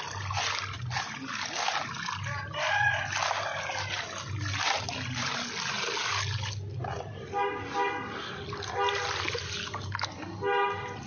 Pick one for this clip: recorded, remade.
recorded